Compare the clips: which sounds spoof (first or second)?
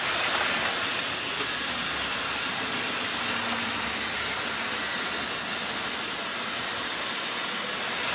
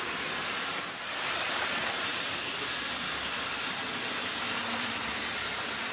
second